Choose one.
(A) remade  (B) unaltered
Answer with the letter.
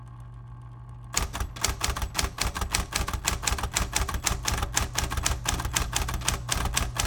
B